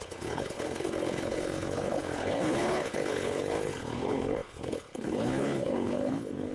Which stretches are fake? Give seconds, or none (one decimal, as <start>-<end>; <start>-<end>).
0.0-6.5